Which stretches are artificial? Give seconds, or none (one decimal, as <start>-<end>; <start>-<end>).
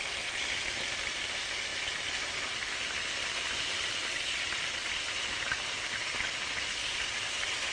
none